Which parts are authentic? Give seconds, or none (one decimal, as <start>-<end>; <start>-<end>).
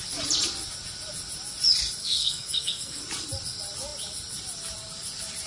0.0-2.0; 3.0-5.5